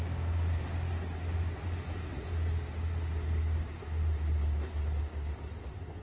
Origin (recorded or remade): recorded